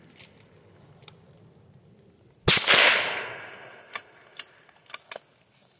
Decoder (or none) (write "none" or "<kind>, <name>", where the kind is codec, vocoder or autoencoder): none